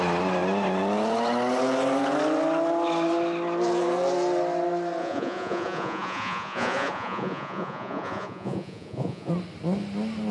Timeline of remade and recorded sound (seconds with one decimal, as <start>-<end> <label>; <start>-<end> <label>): 0.0-5.0 recorded; 5.0-9.3 remade; 9.3-10.3 recorded